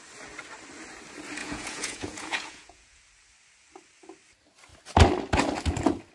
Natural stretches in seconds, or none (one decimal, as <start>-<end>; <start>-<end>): 0.0-1.4; 3.0-6.1